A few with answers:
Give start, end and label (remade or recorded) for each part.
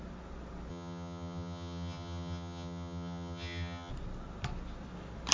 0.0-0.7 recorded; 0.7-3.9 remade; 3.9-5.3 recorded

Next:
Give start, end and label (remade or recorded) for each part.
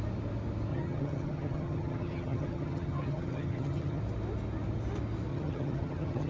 0.0-0.7 recorded; 0.7-4.0 remade; 4.0-5.3 recorded; 5.3-6.3 remade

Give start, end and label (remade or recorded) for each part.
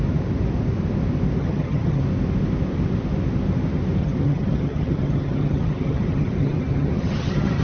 0.0-1.4 recorded; 1.4-2.0 remade; 2.0-4.0 recorded; 4.0-7.6 remade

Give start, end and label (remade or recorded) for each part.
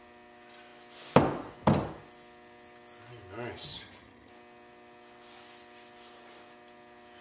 0.0-3.7 recorded; 3.7-4.3 remade; 4.3-7.2 recorded